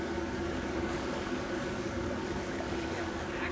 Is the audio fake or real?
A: fake